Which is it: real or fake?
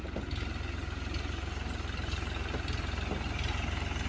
real